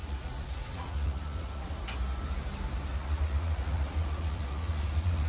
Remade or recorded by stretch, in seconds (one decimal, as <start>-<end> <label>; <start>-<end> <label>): 0.0-1.7 remade; 1.7-2.9 recorded; 2.9-5.3 remade